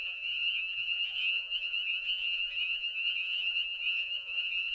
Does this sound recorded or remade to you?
remade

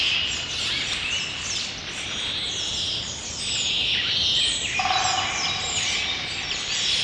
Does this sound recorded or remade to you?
recorded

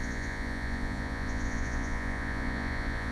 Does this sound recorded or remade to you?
remade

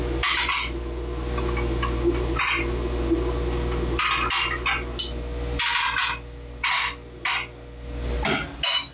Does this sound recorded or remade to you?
recorded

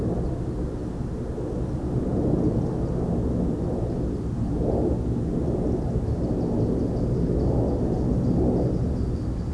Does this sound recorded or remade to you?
recorded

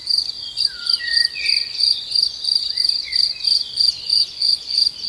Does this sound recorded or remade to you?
remade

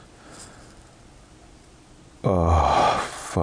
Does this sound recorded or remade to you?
recorded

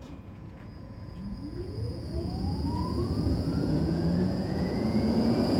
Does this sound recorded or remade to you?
remade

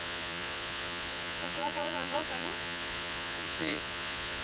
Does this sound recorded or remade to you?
remade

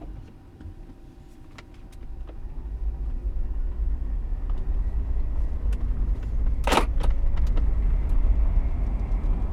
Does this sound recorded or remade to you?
recorded